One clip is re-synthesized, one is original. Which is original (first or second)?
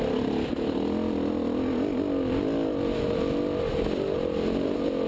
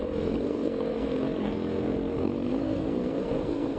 first